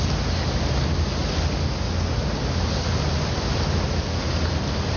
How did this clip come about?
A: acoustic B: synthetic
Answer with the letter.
A